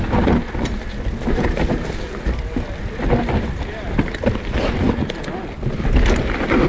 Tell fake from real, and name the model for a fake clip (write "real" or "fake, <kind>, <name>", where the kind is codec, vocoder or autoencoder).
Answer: real